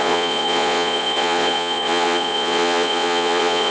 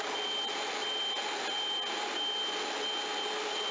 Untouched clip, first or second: second